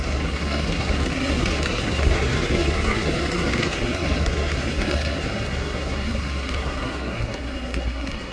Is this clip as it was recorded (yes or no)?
no